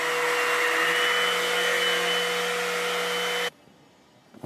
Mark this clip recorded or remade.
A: recorded